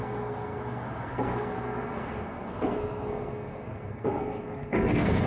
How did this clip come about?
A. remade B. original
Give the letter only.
A